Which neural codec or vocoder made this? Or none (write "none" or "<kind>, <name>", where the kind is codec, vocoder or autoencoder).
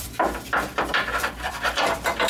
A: vocoder, BigVGAN v2